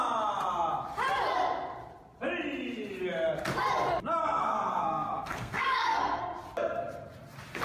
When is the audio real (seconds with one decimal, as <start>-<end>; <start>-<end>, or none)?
0.0-4.2; 6.2-7.6